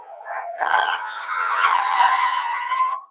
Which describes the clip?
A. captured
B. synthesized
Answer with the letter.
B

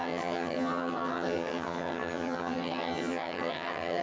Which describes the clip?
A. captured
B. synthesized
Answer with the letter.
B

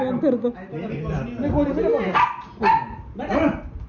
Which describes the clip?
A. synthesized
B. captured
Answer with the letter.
B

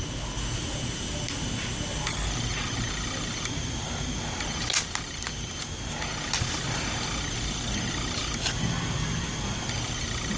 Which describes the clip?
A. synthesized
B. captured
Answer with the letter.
B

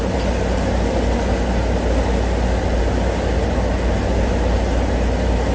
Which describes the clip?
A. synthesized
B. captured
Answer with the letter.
B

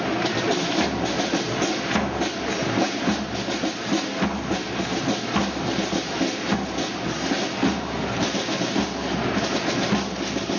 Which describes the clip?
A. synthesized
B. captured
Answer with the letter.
B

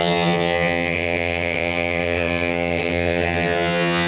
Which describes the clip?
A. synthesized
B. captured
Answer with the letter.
A